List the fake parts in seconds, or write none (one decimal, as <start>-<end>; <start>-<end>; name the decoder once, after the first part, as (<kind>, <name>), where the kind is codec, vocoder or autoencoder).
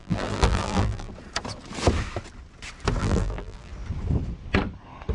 0.0-1.1 (vocoder, BigVGAN v2); 3.0-3.7